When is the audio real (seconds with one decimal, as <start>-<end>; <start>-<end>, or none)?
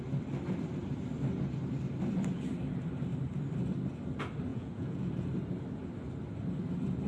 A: 0.0-4.5; 5.1-7.1